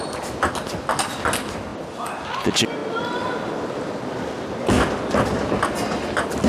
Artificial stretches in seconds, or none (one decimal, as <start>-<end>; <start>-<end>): none